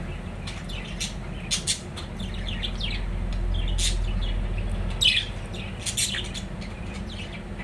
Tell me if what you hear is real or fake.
real